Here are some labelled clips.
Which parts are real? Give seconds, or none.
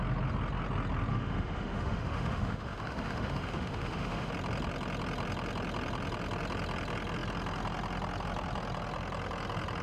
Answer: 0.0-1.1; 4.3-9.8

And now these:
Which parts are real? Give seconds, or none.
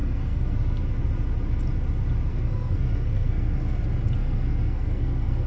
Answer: 0.8-2.3; 3.8-4.2